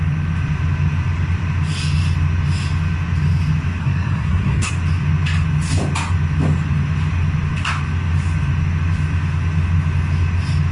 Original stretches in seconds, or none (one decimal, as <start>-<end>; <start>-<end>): 0.0-3.8; 4.7-10.7